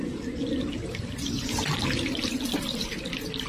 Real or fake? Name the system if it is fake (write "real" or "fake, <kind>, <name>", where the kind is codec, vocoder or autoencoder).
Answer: real